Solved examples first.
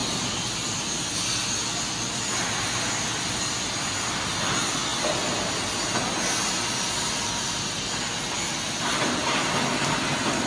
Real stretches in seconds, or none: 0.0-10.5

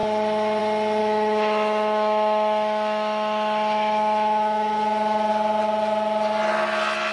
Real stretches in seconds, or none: 0.0-1.0; 5.3-7.1

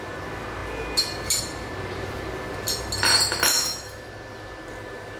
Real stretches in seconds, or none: 0.0-3.5; 4.1-5.2

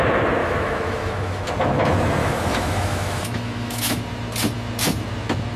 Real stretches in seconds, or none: 0.0-0.4; 1.4-2.2; 4.0-5.6

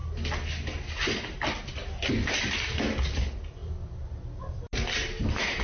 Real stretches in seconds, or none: 0.0-5.6

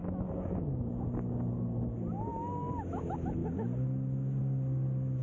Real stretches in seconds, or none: 0.8-5.2

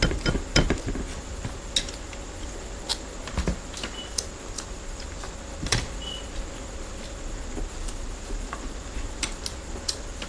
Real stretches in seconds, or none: 0.0-10.3

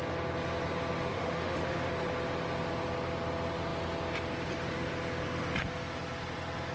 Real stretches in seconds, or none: 0.0-1.1; 1.9-6.7